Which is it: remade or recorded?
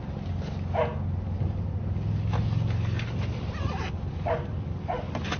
recorded